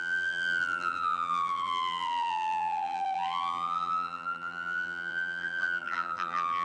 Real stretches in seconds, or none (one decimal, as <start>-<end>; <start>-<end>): none